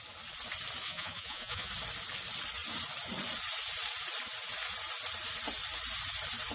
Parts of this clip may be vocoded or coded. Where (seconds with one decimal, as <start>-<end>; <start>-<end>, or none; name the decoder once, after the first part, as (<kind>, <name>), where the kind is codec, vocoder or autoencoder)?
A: 0.8-1.7 (vocoder, Vocos)